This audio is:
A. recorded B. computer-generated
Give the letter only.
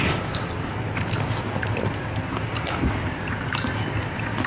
A